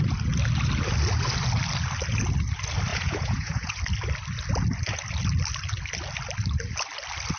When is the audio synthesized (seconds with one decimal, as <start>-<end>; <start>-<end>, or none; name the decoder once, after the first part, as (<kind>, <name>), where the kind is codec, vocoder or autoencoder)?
2.9-3.8 (vocoder, Vocos)